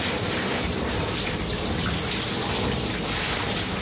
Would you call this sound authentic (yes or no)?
no